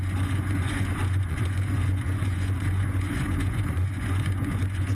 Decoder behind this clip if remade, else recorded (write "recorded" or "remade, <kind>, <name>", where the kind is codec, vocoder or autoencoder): remade, vocoder, Vocos